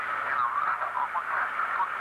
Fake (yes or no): no